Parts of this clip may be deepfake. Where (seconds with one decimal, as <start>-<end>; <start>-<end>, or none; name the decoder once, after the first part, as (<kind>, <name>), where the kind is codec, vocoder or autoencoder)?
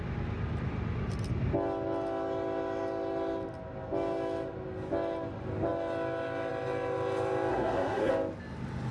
7.5-8.1 (codec, SNAC)